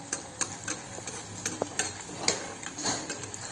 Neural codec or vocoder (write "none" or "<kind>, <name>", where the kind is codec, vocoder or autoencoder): none